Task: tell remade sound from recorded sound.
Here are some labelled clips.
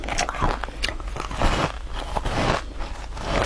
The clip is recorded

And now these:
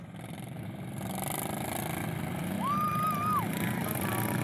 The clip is recorded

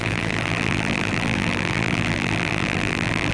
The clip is remade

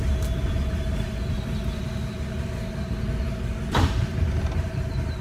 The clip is recorded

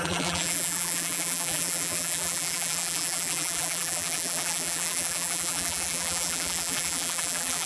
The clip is remade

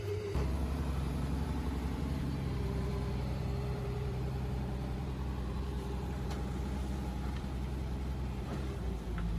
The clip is remade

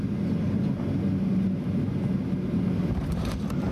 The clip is recorded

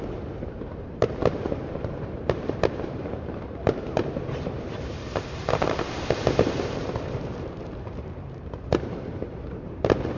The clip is remade